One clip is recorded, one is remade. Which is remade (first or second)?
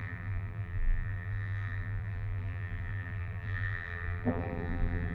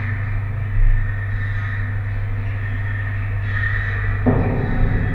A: first